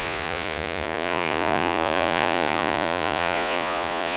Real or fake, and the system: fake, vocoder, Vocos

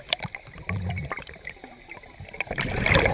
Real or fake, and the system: real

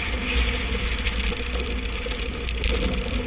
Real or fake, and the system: real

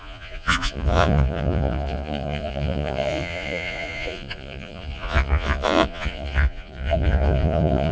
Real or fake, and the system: fake, vocoder, Vocos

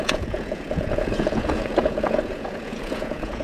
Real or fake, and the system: fake, vocoder, Vocos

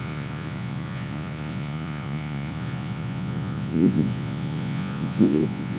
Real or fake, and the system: fake, vocoder, Vocos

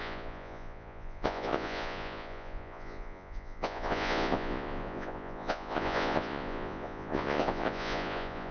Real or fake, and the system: fake, vocoder, Vocos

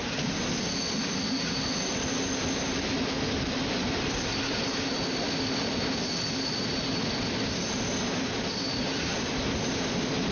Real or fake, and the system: real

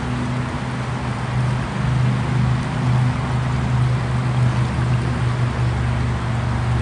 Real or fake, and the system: real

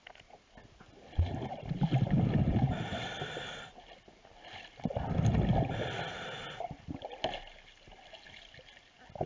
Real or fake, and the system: real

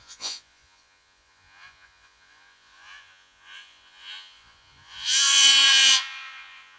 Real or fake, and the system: fake, vocoder, Vocos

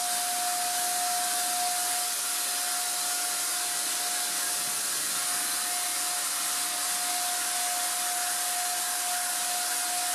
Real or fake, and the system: real